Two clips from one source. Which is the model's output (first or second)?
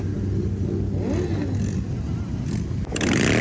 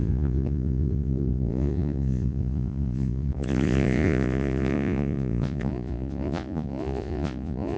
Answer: second